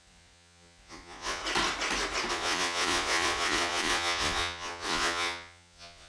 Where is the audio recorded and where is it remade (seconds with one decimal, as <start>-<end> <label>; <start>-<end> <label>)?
0.0-1.4 remade; 1.4-2.3 recorded; 2.3-6.1 remade